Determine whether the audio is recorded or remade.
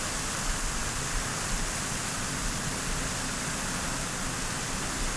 recorded